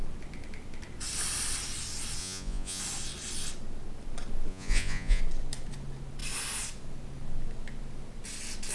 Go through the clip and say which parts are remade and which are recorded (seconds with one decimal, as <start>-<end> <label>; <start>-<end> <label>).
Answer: 0.0-2.2 recorded; 2.2-2.8 remade; 2.8-4.5 recorded; 4.5-5.2 remade; 5.2-8.7 recorded